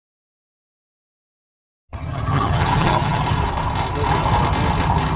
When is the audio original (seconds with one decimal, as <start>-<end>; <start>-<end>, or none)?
0.0-1.9; 3.2-5.2